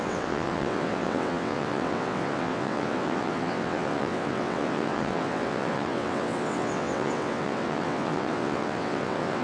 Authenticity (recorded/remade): remade